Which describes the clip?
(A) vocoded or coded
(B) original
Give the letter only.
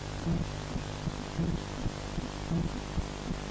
B